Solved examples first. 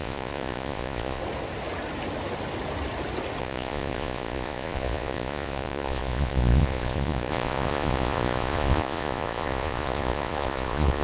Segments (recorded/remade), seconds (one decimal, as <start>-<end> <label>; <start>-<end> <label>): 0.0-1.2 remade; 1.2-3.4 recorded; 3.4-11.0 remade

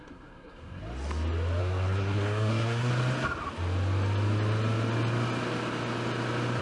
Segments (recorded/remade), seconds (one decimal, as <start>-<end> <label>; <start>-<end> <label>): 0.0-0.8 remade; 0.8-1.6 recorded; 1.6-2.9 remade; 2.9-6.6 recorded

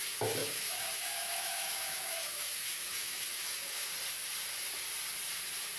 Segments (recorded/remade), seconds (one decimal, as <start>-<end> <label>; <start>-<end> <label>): 0.0-0.4 recorded; 0.4-3.9 remade; 3.9-5.8 recorded